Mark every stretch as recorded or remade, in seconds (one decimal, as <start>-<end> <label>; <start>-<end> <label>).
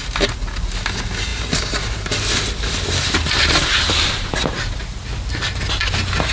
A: 0.0-6.3 recorded